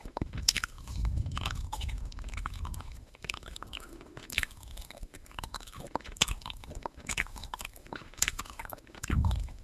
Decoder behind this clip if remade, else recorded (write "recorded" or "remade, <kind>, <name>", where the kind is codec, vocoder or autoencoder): remade, autoencoder, DAC-VAE